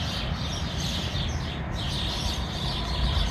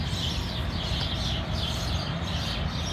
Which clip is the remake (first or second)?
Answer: first